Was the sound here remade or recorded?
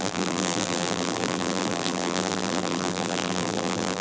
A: remade